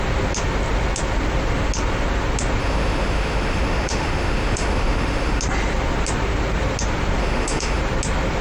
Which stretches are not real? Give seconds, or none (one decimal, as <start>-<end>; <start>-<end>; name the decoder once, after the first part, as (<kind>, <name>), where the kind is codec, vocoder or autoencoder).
2.6-5.4 (autoencoder, DAC-VAE); 7.2-7.8